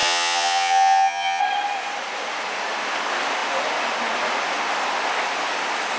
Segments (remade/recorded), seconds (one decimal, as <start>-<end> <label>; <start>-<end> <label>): 0.0-1.4 remade; 1.4-6.0 recorded